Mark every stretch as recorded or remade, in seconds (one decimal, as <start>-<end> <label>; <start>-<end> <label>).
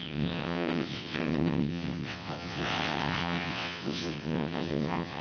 0.0-5.2 remade